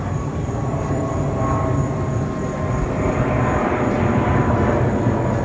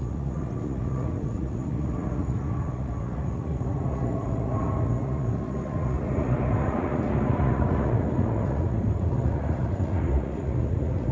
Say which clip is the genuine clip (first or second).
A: first